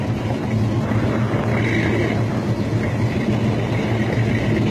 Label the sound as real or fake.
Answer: real